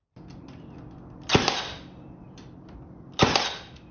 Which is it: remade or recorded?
remade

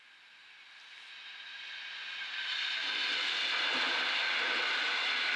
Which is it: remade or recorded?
recorded